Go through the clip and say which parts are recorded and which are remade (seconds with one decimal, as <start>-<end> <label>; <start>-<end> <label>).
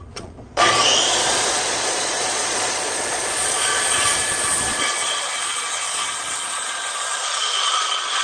0.0-8.2 remade